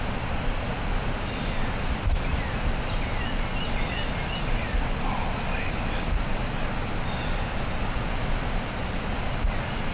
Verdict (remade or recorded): recorded